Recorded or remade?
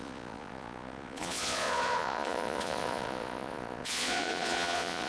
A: remade